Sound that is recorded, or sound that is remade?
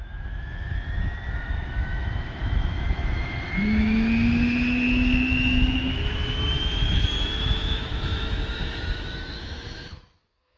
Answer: remade